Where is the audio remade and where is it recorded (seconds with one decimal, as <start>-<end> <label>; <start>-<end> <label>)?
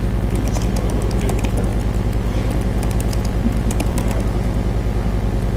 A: 0.0-5.6 recorded